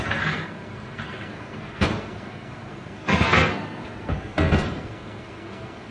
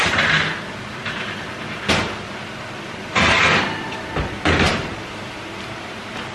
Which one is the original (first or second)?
second